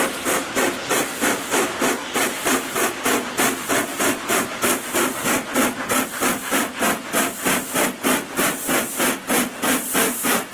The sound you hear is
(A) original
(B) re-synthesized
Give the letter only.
A